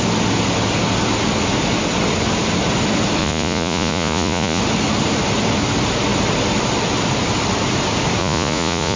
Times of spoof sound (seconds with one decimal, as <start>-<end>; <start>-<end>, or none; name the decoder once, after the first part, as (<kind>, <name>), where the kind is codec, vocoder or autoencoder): 3.2-4.6 (vocoder, Vocos); 8.2-9.0